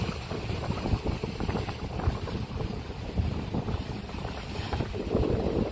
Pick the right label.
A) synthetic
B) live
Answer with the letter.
A